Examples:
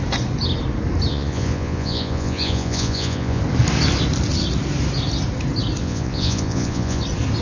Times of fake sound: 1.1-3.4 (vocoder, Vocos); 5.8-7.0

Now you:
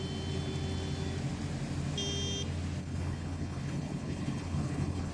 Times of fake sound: 2.8-5.1 (codec, HILCodec)

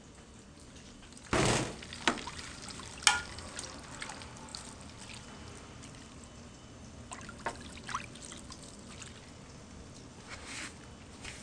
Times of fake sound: none

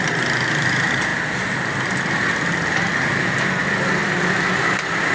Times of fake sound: none

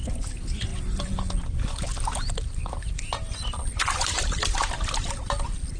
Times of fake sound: none

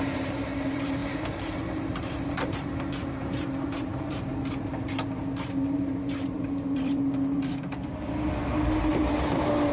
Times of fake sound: 0.0-9.7 (vocoder, BigVGAN v2)

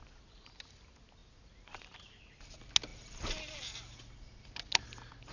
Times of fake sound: none

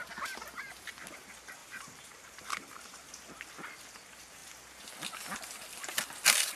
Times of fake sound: 1.6-3.1 (vocoder, BigVGAN v2)